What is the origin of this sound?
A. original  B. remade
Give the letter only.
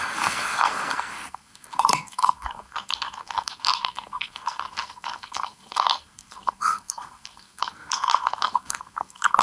B